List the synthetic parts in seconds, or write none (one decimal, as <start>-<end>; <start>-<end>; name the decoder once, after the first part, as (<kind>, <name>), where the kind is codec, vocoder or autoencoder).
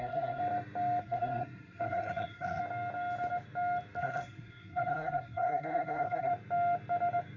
0.0-0.4 (codec, SNAC); 1.0-2.6; 4.0-6.3